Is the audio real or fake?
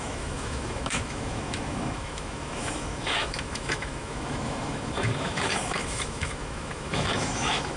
fake